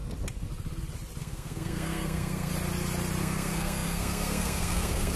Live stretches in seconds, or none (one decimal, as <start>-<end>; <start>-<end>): 0.0-1.2; 2.5-3.2